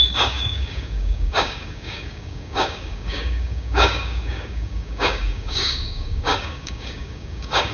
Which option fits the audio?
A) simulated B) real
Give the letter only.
A